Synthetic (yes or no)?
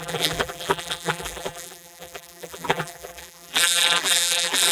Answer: yes